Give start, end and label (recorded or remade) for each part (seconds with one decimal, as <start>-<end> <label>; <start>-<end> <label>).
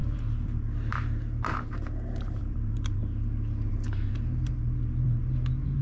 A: 0.0-3.0 remade; 3.0-3.7 recorded; 3.7-5.8 remade